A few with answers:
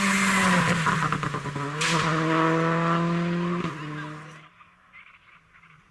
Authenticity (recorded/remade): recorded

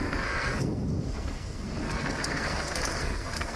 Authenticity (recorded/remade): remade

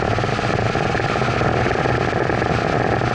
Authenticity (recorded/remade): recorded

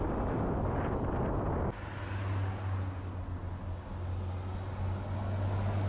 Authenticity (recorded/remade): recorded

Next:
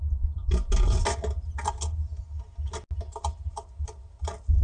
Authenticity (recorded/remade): recorded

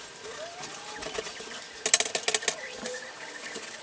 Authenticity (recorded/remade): recorded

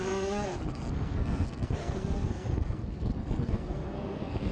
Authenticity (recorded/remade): remade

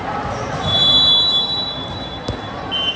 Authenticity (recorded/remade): recorded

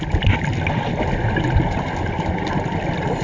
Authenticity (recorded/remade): recorded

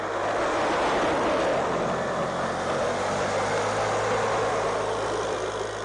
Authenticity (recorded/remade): recorded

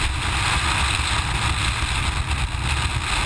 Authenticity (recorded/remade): recorded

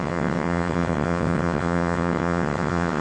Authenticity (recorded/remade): remade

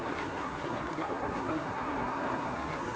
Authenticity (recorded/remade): remade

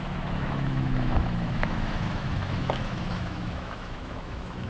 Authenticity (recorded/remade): remade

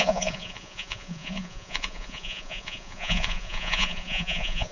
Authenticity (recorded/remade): remade